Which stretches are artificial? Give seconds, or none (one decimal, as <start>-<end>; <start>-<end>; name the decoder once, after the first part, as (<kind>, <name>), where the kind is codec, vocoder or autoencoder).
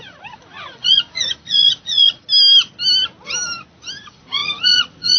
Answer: 0.0-2.2 (vocoder, Vocos); 4.0-5.2